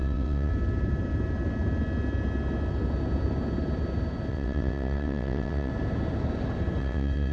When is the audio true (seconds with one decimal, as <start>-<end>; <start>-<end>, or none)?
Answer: 0.5-4.3; 5.7-6.8